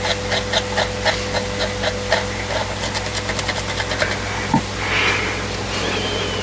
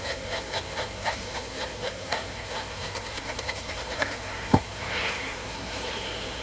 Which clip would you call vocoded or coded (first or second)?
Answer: second